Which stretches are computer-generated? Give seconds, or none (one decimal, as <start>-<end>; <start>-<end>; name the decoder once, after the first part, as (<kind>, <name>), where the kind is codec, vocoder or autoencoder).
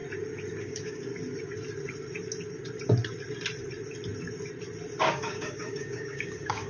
0.6-1.1 (codec, DAC); 5.1-6.7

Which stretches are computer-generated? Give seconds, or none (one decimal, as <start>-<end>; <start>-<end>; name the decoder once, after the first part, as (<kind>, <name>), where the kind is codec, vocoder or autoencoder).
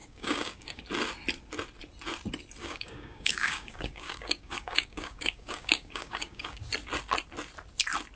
0.0-0.8 (codec, DAC); 2.6-6.6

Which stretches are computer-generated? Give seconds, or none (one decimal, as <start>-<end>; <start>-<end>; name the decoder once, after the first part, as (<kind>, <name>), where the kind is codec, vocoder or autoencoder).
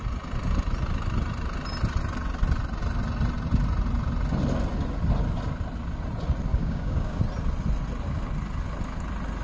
6.5-7.2 (codec, DAC)